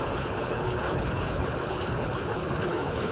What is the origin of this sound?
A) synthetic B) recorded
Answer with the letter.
A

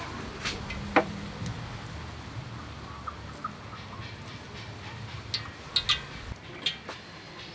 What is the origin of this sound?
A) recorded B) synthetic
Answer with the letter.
A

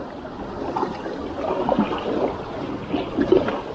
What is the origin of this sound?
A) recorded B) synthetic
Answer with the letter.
A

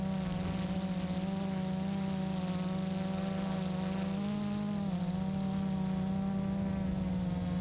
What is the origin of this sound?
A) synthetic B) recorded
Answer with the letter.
B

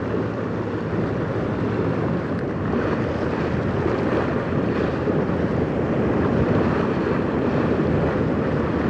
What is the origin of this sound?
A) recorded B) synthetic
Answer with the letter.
A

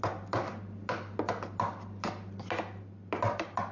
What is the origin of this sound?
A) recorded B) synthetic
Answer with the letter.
A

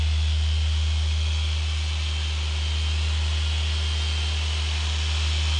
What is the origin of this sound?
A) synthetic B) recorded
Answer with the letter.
B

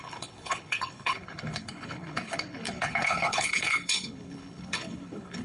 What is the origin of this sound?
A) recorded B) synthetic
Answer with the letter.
B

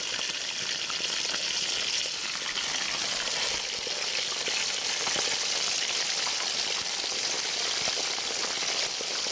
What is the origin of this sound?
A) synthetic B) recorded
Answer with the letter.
B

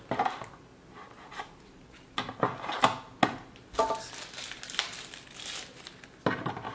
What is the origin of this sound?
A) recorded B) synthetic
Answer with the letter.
A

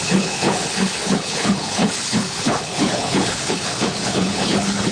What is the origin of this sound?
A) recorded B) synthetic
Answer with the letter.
B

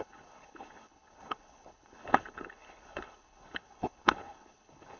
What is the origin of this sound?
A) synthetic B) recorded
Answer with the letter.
A